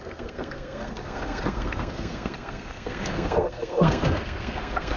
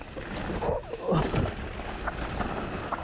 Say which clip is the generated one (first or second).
first